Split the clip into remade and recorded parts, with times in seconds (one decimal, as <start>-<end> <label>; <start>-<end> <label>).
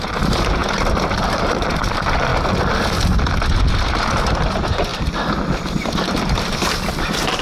0.0-0.6 remade; 0.6-1.2 recorded; 1.2-2.3 remade; 2.3-3.6 recorded; 3.6-4.9 remade; 4.9-5.8 recorded; 5.8-7.4 remade